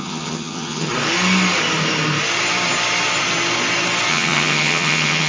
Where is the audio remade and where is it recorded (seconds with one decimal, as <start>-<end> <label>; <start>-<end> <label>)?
0.0-0.9 remade; 0.9-4.1 recorded; 4.1-5.3 remade